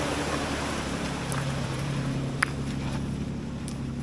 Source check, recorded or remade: remade